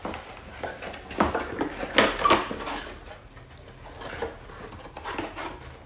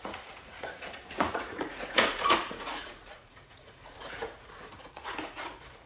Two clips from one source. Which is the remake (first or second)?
second